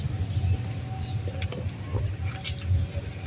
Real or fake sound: real